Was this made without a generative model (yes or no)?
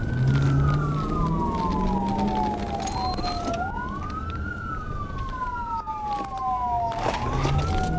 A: yes